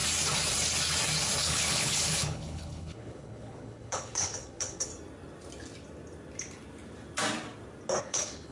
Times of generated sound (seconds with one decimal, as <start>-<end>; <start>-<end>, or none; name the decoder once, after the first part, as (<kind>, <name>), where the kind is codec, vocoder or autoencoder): 1.4-4.9 (codec, HILCodec); 8.0-8.5